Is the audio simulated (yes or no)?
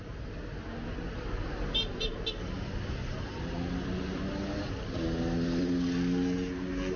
no